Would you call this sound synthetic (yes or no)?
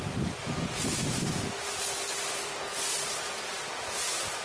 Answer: no